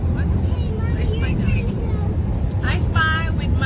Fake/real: real